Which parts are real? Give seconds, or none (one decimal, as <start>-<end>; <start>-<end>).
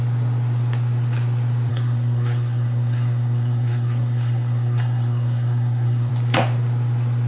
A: 0.0-1.7; 6.1-7.3